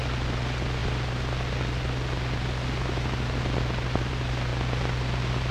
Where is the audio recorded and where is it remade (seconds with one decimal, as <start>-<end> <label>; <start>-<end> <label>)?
0.0-5.5 recorded